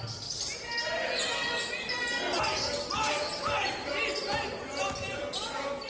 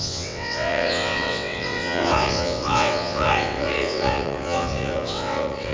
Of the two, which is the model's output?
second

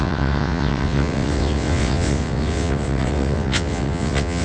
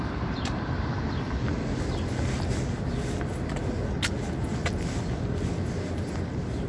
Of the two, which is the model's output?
first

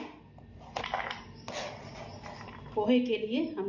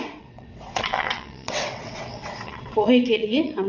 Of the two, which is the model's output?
second